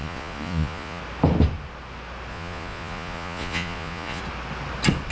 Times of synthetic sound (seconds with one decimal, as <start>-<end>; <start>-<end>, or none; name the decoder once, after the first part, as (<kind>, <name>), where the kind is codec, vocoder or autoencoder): 0.0-1.0 (vocoder, Vocos); 2.3-4.2